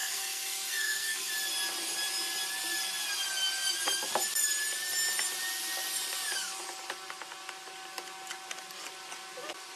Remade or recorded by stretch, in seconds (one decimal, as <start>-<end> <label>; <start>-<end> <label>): 0.0-1.3 remade; 1.3-9.8 recorded